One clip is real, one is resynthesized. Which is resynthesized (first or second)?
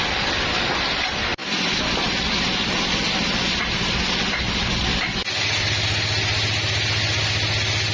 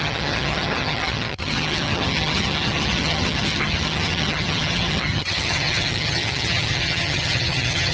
second